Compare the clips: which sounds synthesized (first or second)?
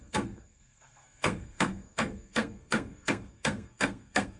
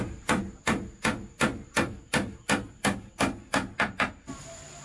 first